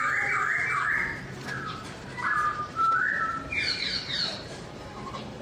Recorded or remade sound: remade